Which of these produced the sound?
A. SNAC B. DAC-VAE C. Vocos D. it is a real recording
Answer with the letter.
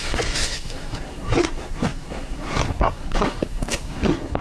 A